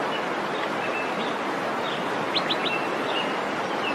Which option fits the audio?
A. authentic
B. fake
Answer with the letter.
A